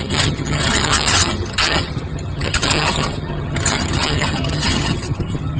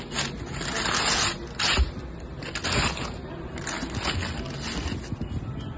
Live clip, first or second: second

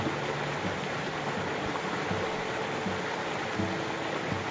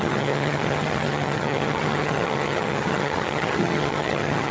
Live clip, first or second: first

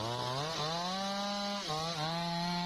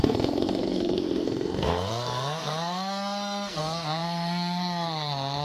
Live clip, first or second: first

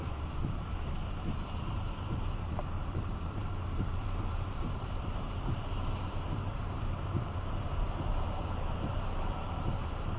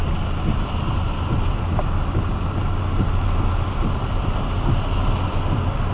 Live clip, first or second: second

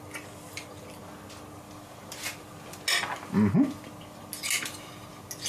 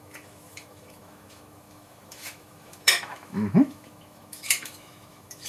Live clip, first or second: first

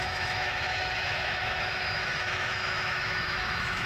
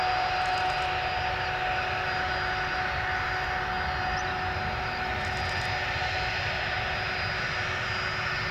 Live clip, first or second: second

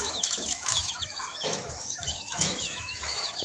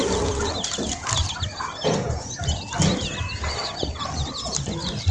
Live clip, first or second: second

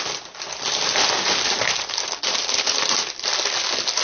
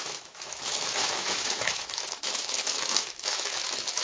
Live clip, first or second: first